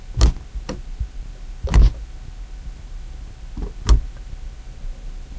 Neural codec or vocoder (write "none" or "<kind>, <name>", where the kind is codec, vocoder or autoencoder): none